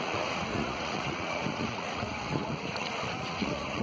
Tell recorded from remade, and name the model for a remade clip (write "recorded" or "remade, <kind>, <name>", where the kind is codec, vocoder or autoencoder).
remade, vocoder, Vocos